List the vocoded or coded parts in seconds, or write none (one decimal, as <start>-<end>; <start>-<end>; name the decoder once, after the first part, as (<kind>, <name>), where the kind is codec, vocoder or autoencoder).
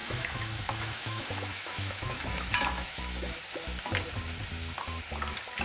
0.0-3.4 (autoencoder, DAC-VAE)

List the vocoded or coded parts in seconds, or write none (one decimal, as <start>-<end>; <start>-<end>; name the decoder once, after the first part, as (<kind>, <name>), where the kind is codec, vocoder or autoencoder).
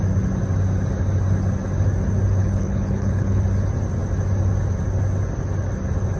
2.4-3.4 (codec, HILCodec)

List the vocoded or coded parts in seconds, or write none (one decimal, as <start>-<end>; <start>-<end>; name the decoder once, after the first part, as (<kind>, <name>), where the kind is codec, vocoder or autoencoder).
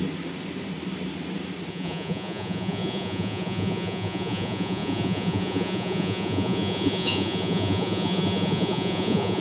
1.7-9.4 (vocoder, Vocos)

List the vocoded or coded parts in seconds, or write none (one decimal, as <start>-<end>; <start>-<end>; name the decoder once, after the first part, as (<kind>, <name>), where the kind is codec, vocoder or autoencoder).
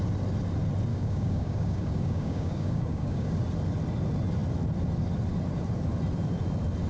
0.9-3.4 (codec, DAC)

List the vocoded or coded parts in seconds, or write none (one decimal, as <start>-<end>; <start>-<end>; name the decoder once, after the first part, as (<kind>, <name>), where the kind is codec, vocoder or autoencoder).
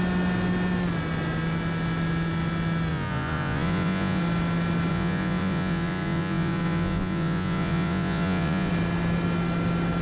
2.9-4.2 (vocoder, Vocos); 4.9-8.7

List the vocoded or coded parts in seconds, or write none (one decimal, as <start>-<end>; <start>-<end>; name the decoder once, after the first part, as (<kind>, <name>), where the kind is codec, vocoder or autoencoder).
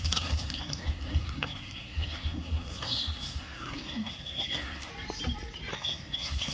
0.0-4.9 (codec, SNAC); 5.7-6.5